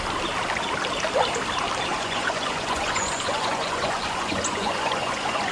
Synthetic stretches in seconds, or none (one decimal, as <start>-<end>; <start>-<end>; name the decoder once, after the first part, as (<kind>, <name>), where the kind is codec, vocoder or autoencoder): 1.9-5.5 (vocoder, Vocos)

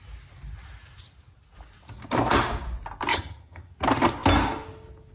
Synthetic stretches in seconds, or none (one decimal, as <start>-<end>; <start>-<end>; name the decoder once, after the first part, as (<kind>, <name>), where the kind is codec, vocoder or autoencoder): 3.1-3.7 (vocoder, HiFi-GAN)

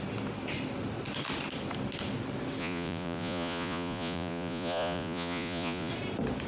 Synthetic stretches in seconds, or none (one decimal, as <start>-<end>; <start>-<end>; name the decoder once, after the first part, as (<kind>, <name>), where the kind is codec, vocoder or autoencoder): 2.6-5.9 (vocoder, Vocos)

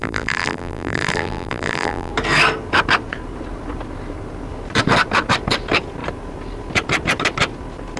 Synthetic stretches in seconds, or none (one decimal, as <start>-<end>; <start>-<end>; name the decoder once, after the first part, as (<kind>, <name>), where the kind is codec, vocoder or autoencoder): 0.0-2.1 (vocoder, BigVGAN v2)

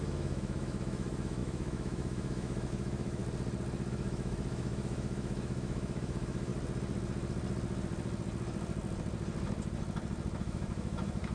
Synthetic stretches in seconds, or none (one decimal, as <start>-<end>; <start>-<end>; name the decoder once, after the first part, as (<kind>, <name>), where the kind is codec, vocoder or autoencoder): 0.0-3.2 (autoencoder, DAC-VAE); 3.9-6.5; 10.4-11.3

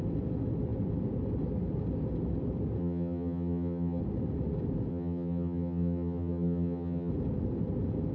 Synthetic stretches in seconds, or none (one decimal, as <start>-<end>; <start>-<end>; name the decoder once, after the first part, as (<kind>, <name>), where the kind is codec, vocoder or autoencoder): 2.8-4.0 (vocoder, HiFi-GAN); 4.9-7.1

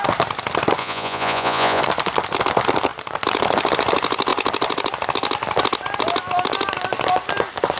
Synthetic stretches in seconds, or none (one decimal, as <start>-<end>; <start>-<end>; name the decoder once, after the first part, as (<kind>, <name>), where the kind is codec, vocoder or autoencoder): 0.8-1.8 (vocoder, Vocos)